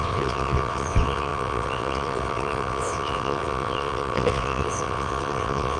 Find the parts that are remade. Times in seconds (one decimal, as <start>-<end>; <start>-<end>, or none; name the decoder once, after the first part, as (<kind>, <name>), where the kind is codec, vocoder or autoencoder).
0.0-5.8 (vocoder, WaveNeXt)